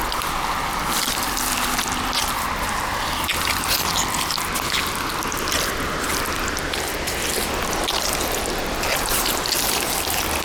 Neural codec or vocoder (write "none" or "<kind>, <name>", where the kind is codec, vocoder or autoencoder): none